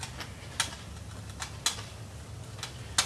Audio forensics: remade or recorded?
recorded